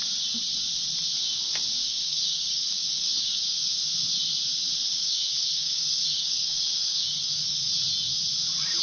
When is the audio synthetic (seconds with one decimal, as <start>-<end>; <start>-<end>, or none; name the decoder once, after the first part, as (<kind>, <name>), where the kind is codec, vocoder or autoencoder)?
1.8-3.8 (codec, DAC); 4.9-7.7